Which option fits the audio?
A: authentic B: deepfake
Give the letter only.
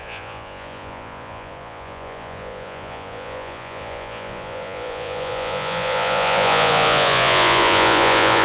B